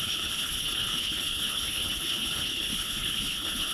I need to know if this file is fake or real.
fake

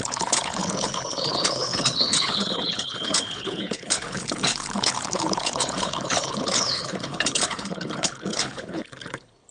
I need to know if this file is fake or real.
fake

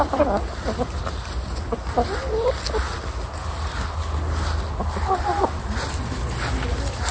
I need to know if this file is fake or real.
real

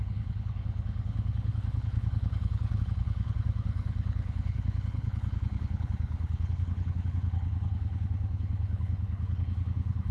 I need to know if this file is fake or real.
fake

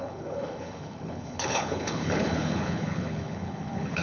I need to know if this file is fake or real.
fake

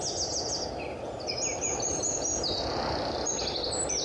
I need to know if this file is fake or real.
real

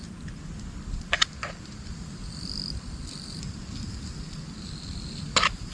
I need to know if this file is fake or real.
real